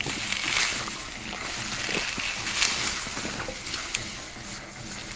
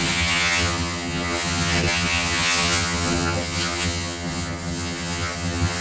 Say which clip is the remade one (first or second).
second